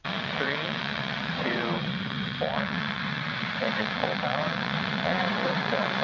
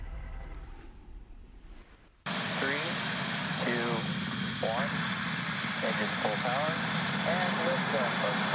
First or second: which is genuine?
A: second